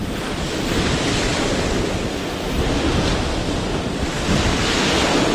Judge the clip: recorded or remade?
recorded